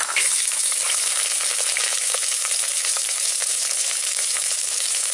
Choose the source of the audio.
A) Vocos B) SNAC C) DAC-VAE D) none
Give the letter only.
C